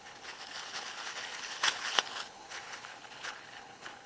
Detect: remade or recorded remade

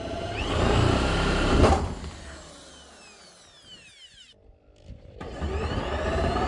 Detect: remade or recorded recorded